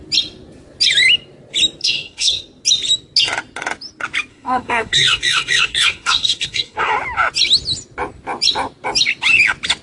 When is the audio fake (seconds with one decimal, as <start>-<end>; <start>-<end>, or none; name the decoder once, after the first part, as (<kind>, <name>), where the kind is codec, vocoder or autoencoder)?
1.8-2.4 (codec, SNAC); 4.3-6.9

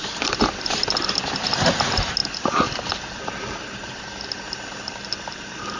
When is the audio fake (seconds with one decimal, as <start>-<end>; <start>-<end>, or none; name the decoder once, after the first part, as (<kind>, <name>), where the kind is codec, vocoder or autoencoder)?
2.2-2.9 (vocoder, BigVGAN v2)

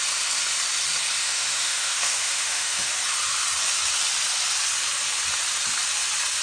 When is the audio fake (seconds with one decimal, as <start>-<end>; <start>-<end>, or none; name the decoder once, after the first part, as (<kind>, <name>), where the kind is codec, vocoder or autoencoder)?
1.2-2.9 (autoencoder, DAC-VAE)